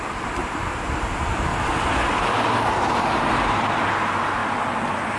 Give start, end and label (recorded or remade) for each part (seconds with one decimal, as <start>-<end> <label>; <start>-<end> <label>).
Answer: 0.0-1.5 remade; 1.5-2.7 recorded; 2.7-4.4 remade; 4.4-5.2 recorded